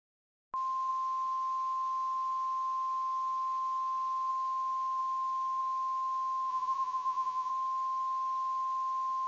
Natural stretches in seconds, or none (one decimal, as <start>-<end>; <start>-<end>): 0.0-6.5; 7.5-9.3